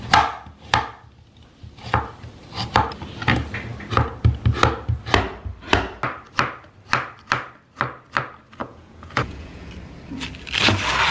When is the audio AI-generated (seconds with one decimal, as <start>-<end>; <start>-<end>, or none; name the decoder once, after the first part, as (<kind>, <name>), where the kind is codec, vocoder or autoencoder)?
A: 8.6-9.7 (vocoder, Vocos)